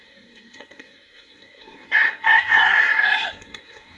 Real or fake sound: fake